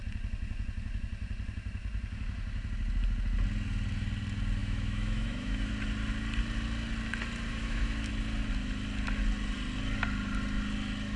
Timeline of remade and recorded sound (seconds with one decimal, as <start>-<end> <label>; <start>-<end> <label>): 0.0-4.6 recorded; 4.6-5.7 remade; 5.7-7.5 recorded; 7.5-8.1 remade; 8.1-11.2 recorded